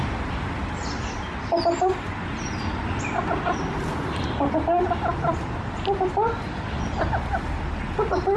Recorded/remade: recorded